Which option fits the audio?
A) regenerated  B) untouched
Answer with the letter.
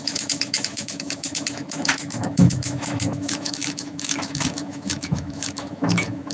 A